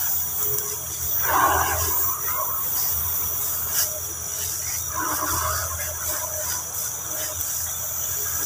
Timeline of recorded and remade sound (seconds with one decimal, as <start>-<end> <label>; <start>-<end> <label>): 0.0-8.5 recorded